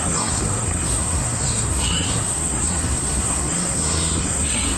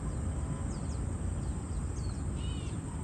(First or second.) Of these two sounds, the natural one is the second